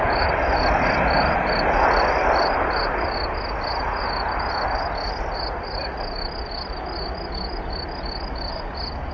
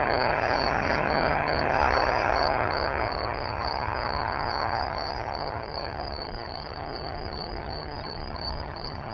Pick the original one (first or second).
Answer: first